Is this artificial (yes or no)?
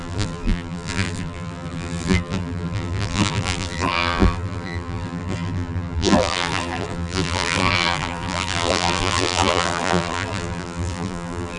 yes